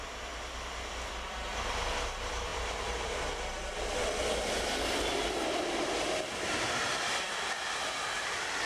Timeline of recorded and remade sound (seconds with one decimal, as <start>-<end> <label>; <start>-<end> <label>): 0.0-8.7 recorded